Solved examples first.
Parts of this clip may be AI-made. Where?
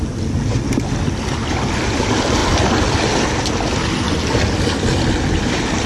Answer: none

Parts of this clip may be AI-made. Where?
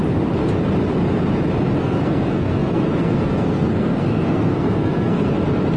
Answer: 1.8-5.3 (codec, SNAC)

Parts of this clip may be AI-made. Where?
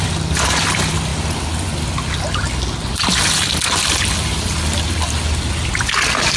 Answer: none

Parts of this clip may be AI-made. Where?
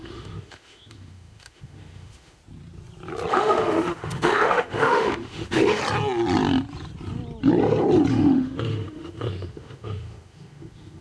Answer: 0.0-2.4 (autoencoder, DAC-VAE); 3.3-5.8; 8.1-11.0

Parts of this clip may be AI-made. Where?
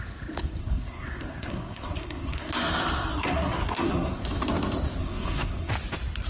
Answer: 0.6-2.5 (codec, SNAC); 3.1-4.2; 5.0-5.7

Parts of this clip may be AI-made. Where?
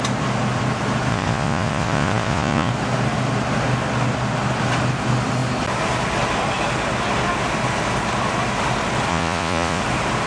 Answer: 1.1-2.7 (vocoder, Vocos); 9.1-9.8